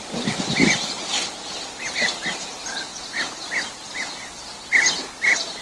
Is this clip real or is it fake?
real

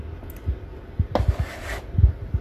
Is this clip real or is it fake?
real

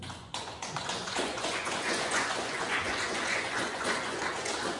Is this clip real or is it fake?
fake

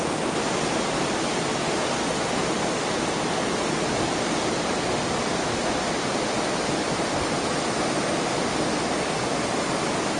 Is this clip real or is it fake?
real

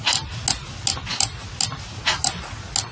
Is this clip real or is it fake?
real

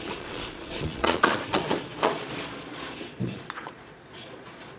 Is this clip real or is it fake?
fake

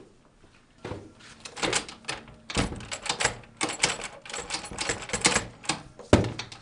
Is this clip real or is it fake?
real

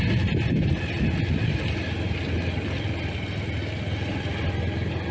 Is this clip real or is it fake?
real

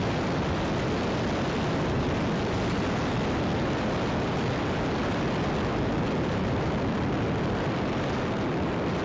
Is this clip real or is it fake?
real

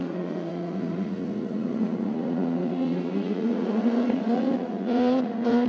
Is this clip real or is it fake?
fake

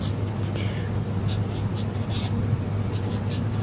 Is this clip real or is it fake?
real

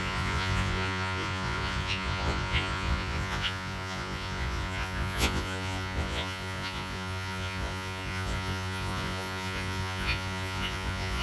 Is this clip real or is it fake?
fake